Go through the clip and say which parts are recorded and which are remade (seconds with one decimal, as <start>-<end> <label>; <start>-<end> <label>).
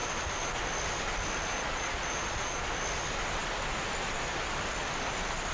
0.0-1.5 recorded; 1.5-2.7 remade; 2.7-5.5 recorded